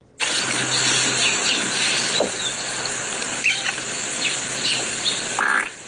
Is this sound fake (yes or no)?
no